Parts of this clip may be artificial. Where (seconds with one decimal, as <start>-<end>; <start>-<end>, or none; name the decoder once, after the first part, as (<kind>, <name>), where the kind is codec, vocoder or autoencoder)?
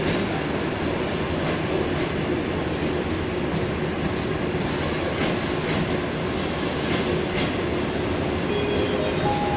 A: none